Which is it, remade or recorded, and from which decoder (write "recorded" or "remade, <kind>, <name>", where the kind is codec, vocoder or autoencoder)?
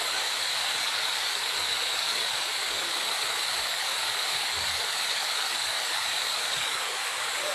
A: remade, codec, DAC